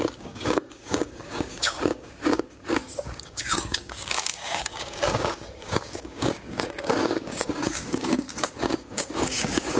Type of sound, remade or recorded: remade